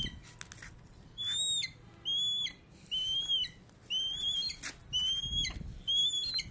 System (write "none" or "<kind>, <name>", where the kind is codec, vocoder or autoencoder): none